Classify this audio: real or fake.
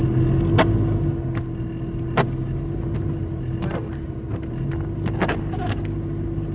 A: real